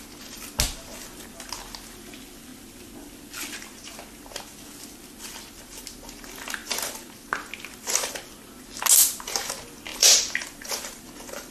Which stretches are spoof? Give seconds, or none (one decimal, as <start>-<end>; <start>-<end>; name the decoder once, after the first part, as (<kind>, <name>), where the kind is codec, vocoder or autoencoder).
9.9-10.7 (vocoder, BigVGAN v2)

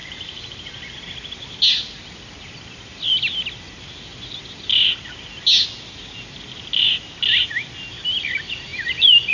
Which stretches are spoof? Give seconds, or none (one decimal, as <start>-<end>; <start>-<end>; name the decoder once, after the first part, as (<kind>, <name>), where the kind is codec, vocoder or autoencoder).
0.0-1.0 (vocoder, BigVGAN v2)

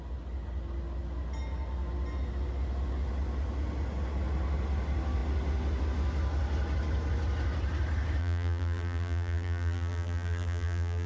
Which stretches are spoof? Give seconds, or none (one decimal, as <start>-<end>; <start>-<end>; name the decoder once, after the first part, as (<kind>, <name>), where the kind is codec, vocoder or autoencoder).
8.2-11.1 (vocoder, BigVGAN v2)

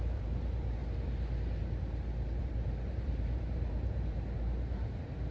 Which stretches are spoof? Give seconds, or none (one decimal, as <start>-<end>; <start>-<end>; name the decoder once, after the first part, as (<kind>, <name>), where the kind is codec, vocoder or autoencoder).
0.0-0.8 (vocoder, BigVGAN v2); 2.4-5.3

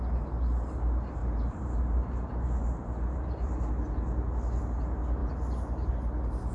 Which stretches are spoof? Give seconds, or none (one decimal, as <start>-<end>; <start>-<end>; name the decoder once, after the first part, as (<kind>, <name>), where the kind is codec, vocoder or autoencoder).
1.2-3.7 (vocoder, BigVGAN v2); 5.2-5.9